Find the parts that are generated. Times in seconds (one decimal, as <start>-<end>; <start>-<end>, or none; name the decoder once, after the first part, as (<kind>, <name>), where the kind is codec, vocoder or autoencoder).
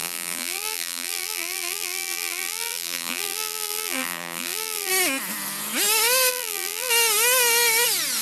0.0-4.9 (vocoder, BigVGAN v2); 6.3-6.9